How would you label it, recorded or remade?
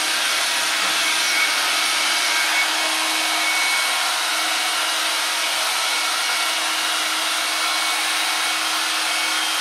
recorded